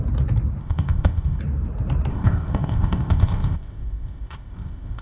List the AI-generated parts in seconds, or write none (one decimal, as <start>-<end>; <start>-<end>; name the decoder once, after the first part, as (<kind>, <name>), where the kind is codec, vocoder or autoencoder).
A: 0.6-1.4 (codec, ZipCodec); 2.1-5.0